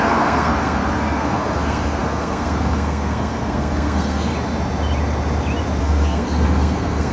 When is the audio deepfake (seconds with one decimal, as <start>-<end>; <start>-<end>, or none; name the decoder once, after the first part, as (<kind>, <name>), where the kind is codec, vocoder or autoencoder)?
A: 0.0-4.3 (codec, SNAC); 5.8-7.1